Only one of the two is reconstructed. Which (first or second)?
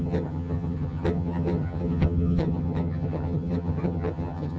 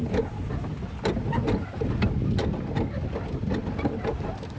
first